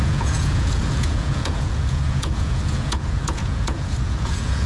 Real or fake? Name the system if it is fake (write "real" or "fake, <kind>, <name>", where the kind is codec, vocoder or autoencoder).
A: fake, vocoder, Vocos